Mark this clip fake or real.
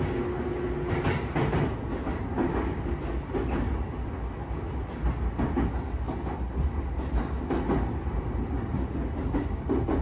real